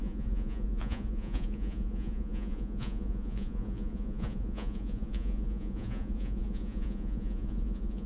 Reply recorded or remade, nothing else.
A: remade